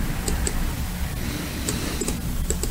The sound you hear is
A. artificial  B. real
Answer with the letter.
B